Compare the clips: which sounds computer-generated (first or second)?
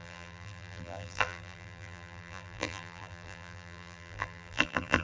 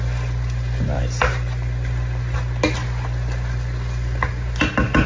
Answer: first